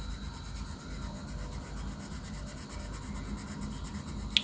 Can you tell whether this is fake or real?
real